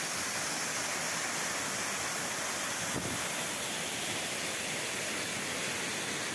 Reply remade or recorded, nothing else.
recorded